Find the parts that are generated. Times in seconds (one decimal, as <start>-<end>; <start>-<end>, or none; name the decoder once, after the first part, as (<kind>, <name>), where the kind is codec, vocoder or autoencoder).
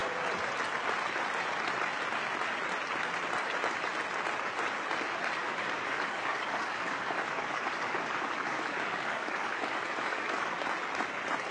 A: 5.4-10.5 (codec, DAC)